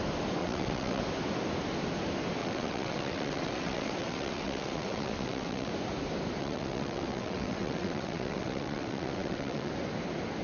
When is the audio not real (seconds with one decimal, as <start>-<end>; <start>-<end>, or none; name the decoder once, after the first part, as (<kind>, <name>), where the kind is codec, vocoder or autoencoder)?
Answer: 0.4-1.0 (vocoder, WaveNeXt); 2.4-5.7; 6.4-9.7